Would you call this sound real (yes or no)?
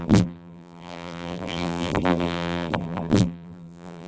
no